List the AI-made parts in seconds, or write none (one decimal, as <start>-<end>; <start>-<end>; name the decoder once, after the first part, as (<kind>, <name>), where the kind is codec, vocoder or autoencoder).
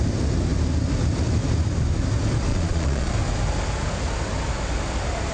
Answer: 2.5-3.1 (vocoder, Vocos)